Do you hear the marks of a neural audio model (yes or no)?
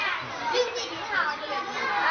no